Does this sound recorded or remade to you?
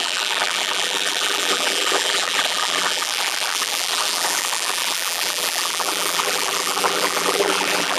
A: remade